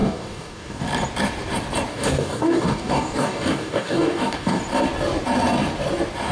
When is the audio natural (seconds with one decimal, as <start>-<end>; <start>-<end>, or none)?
0.8-1.9; 4.6-6.3